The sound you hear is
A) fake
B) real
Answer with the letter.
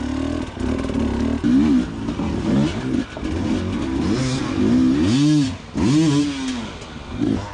B